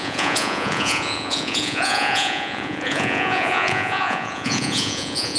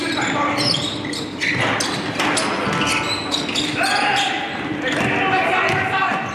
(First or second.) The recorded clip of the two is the second